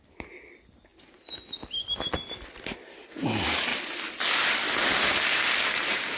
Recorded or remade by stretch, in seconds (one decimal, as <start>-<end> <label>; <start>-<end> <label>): 0.0-6.2 recorded